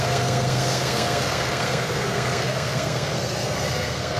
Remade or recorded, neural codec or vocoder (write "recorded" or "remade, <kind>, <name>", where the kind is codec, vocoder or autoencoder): remade, codec, SNAC